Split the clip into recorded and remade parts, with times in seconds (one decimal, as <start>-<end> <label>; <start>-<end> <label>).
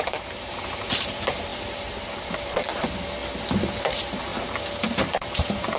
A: 0.0-3.2 remade; 3.2-3.8 recorded; 3.8-4.3 remade; 4.3-5.1 recorded; 5.1-5.8 remade